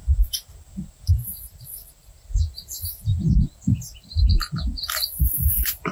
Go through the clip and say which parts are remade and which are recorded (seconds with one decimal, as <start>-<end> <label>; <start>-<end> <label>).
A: 0.0-1.1 recorded; 1.1-3.1 remade; 3.1-3.6 recorded; 3.6-4.1 remade; 4.1-5.2 recorded; 5.2-5.9 remade